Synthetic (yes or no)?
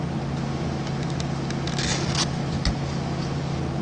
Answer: no